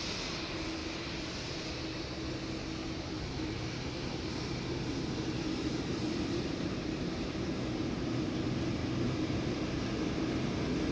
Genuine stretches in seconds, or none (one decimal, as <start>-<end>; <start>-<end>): 0.0-0.8; 1.7-2.8; 7.6-8.8; 10.3-10.9